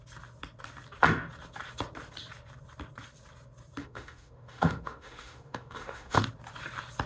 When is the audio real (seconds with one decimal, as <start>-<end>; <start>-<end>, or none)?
0.0-3.8; 6.2-7.1